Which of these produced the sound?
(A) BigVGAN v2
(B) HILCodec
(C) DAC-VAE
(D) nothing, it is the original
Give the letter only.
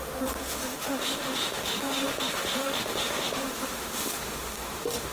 C